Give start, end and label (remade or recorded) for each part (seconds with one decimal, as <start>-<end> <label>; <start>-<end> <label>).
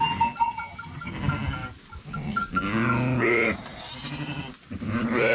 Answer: 0.0-0.4 recorded; 0.4-1.1 remade; 1.1-5.3 recorded